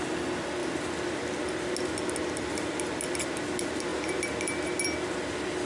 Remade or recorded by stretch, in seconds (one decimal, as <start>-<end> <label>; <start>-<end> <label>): 0.0-5.7 recorded